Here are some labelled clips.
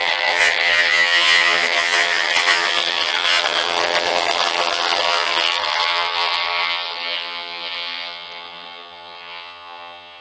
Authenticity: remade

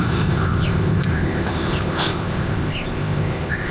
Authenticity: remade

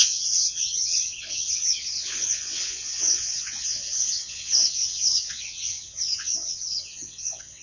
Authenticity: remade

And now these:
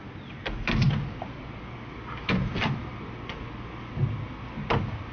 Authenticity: recorded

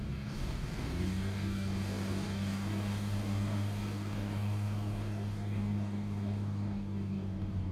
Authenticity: remade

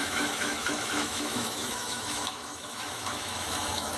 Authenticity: remade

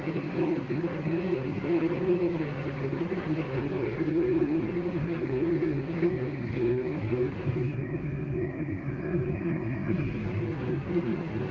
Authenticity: remade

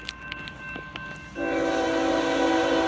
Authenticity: recorded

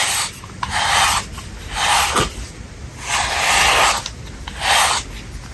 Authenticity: recorded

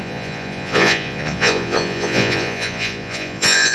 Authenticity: remade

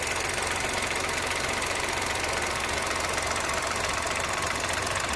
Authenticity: recorded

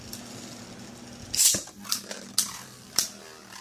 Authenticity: recorded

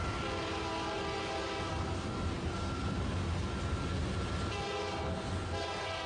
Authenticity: recorded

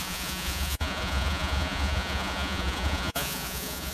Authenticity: remade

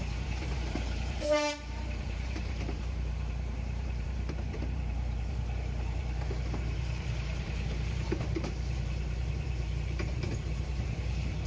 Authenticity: remade